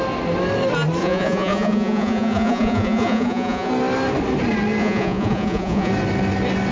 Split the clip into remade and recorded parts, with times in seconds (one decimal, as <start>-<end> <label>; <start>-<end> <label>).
0.0-1.0 recorded; 1.0-3.7 remade; 3.7-4.8 recorded; 4.8-5.9 remade; 5.9-6.7 recorded